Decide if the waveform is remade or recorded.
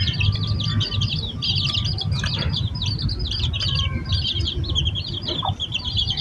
recorded